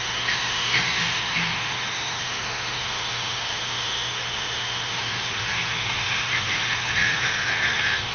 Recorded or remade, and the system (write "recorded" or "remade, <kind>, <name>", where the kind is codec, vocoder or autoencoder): remade, autoencoder, DAC-VAE